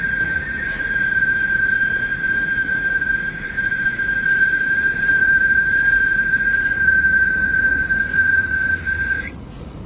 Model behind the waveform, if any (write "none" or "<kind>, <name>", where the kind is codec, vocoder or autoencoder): vocoder, Vocos